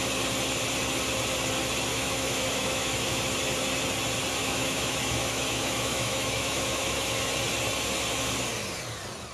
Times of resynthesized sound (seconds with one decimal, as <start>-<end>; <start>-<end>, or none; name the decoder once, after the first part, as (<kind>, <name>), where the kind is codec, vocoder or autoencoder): 1.9-3.2 (autoencoder, DAC-VAE); 4.4-7.3